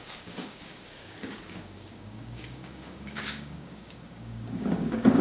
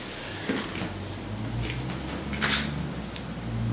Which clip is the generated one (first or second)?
first